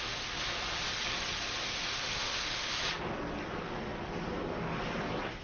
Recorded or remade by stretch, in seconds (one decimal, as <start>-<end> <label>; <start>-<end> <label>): 0.0-1.9 recorded; 1.9-2.7 remade; 2.7-5.4 recorded

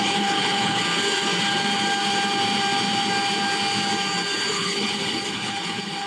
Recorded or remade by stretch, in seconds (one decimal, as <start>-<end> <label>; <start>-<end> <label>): 0.0-0.8 remade; 0.8-4.5 recorded; 4.5-6.1 remade

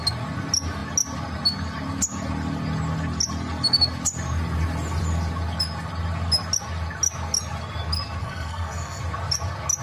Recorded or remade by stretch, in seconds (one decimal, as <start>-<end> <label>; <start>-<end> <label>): 0.0-8.2 recorded; 8.2-9.0 remade; 9.0-9.8 recorded

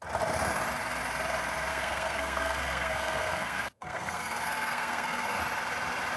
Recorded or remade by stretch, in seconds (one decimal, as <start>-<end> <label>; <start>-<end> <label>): 0.0-1.7 recorded; 1.7-5.4 remade; 5.4-6.2 recorded

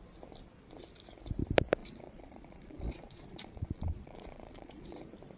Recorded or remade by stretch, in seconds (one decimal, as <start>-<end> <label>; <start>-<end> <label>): 0.0-1.8 recorded; 1.8-5.0 remade; 5.0-5.4 recorded

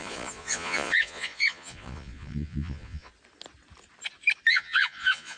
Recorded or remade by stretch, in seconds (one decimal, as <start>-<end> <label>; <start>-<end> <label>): 0.0-3.1 remade; 3.1-4.5 recorded; 4.5-5.4 remade